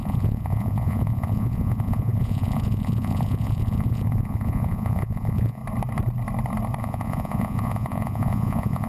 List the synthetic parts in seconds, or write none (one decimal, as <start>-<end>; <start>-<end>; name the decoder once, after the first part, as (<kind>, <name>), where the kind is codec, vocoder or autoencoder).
0.0-5.6 (vocoder, Vocos); 6.8-8.9